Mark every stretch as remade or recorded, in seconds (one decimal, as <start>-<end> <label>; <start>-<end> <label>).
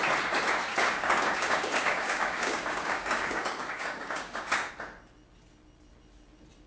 0.0-0.7 recorded; 0.7-4.7 remade; 4.7-6.7 recorded